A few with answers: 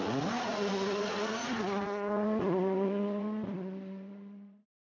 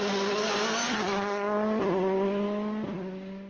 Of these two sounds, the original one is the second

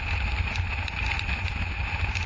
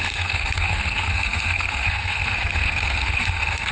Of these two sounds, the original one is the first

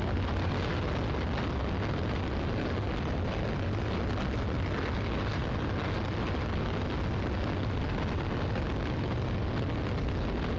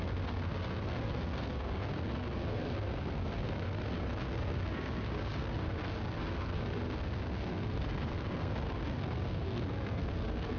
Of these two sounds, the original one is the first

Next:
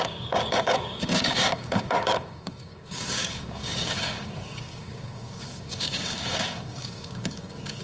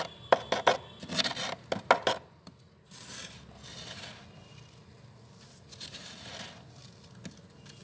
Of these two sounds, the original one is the second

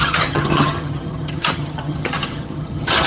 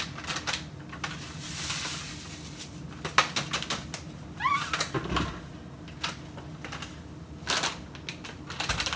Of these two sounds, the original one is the second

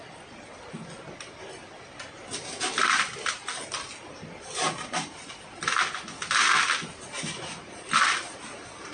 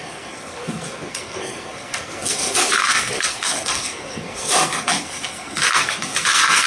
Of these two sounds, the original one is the first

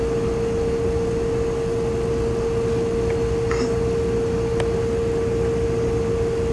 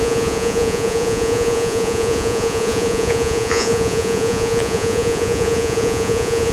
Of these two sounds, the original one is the first